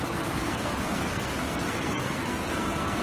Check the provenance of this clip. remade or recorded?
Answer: remade